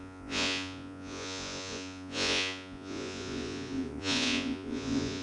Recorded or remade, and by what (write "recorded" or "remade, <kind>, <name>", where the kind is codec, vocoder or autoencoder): remade, vocoder, Vocos